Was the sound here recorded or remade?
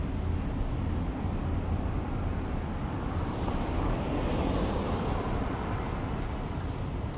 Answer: recorded